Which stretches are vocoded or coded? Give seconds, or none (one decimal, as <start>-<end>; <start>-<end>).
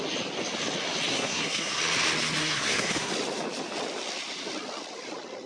1.1-1.8; 2.4-3.1